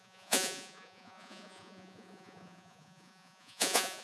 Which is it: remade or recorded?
remade